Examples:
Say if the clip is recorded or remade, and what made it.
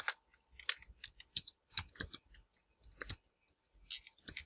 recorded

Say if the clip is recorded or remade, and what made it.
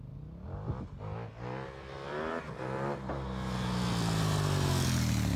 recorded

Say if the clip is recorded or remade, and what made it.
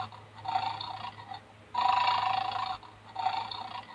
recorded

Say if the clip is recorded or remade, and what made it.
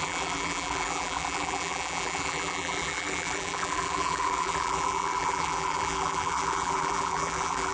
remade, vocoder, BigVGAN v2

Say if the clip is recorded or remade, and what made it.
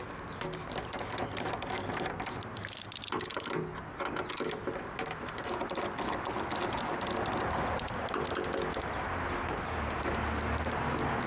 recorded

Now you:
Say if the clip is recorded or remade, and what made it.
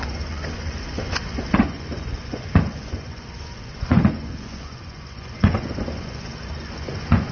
remade, vocoder, Vocos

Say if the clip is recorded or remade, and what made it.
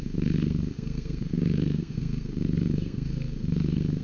remade, codec, SNAC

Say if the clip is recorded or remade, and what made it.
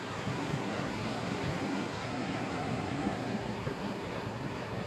remade, codec, SNAC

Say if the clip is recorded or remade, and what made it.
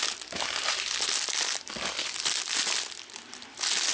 recorded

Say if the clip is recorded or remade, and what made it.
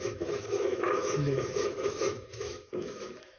remade, autoencoder, DAC-VAE